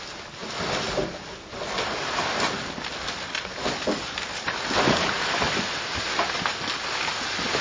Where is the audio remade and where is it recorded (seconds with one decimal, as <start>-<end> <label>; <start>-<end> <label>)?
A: 0.0-7.6 recorded